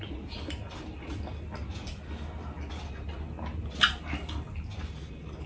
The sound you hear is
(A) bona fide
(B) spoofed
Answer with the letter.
A